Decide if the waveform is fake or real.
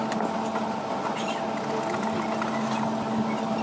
real